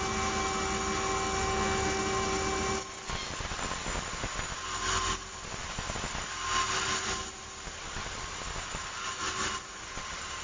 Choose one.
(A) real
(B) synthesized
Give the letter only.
A